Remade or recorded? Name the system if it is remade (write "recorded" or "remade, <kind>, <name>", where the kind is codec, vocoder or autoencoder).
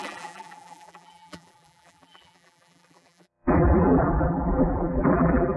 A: remade, vocoder, BigVGAN v2